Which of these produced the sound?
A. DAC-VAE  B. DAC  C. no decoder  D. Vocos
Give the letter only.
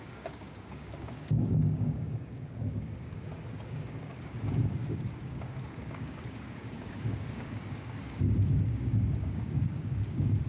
B